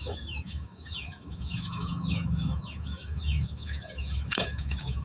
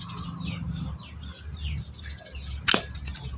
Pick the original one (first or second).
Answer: second